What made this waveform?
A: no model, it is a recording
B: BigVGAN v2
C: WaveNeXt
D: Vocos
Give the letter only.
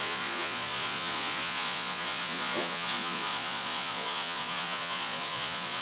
D